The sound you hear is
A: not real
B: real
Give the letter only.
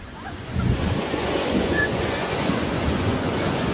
A